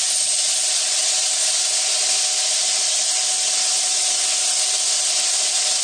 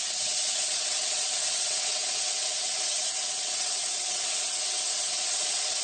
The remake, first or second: second